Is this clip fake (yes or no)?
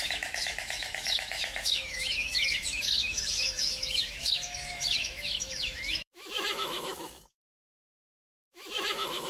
yes